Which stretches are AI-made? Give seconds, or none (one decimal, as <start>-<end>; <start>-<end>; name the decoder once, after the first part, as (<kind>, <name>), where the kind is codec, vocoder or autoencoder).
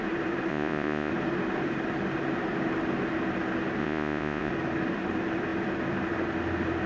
0.5-1.1 (vocoder, Vocos); 3.8-4.5